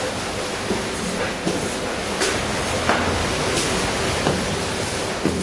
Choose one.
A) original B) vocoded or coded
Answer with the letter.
A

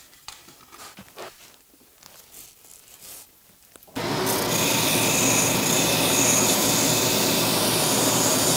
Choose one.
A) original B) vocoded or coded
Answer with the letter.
A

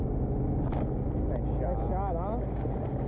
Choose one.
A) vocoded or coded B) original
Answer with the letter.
B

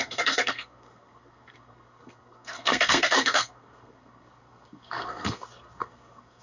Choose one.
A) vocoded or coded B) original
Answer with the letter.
A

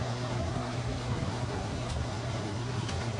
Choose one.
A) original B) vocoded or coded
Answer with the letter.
B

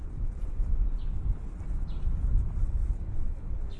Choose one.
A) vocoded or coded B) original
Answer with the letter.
B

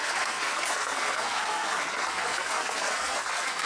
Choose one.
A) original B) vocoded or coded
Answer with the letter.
B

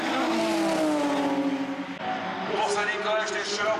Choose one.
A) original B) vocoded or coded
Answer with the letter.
A